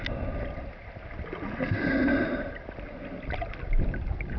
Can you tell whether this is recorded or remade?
recorded